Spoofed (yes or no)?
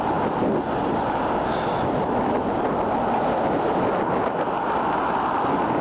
no